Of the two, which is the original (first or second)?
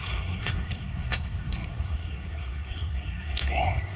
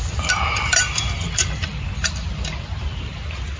second